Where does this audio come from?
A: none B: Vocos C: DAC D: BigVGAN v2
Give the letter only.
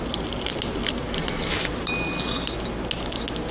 A